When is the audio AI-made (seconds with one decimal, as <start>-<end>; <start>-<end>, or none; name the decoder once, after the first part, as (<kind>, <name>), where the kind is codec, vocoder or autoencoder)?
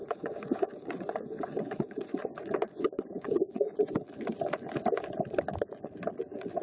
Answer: 0.0-4.0 (vocoder, Vocos)